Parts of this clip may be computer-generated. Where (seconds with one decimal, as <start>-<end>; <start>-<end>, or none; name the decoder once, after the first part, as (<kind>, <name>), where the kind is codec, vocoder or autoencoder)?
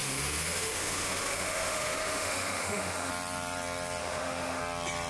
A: 0.0-3.1 (autoencoder, DAC-VAE); 4.0-4.6